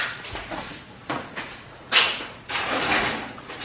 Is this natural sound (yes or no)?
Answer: no